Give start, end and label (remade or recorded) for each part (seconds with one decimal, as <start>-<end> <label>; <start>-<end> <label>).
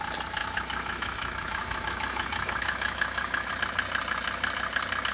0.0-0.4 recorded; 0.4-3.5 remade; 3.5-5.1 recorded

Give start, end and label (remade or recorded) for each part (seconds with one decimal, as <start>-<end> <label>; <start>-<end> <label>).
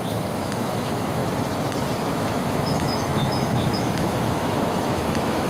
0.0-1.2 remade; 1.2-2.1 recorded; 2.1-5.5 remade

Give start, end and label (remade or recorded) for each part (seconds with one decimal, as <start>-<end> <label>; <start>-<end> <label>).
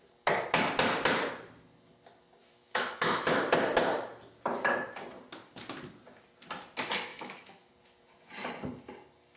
0.0-2.4 recorded; 2.4-3.4 remade; 3.4-7.1 recorded; 7.1-7.7 remade; 7.7-9.4 recorded